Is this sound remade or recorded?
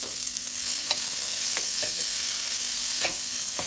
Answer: remade